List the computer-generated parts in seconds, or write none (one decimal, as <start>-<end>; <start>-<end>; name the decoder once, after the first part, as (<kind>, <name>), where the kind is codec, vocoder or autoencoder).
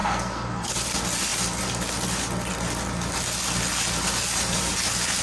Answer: 0.0-0.7 (codec, SNAC)